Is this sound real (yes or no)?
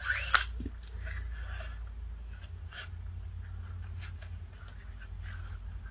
yes